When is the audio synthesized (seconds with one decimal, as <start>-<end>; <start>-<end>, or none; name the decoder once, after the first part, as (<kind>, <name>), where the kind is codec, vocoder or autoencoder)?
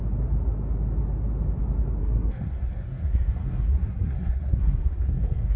2.0-5.6 (codec, SNAC)